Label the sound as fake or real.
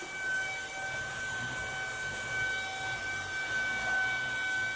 real